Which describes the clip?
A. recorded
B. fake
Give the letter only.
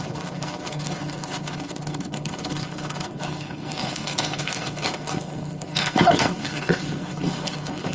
B